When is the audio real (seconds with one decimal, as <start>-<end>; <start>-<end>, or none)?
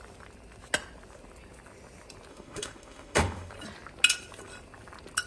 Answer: 0.0-2.3; 3.5-5.3